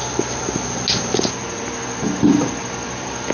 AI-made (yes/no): no